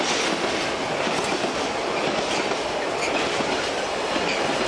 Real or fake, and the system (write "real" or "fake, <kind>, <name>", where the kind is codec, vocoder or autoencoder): real